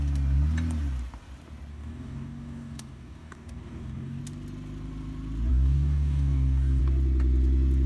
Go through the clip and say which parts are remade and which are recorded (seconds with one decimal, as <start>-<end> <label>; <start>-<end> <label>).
0.0-1.7 recorded; 1.7-4.2 remade; 4.2-5.5 recorded; 5.5-6.8 remade; 6.8-7.9 recorded